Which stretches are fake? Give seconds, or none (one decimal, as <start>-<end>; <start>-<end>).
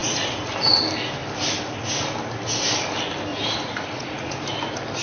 0.0-0.5; 3.3-4.4